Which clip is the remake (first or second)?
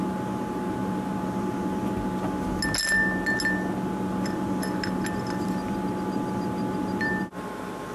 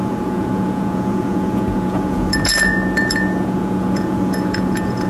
second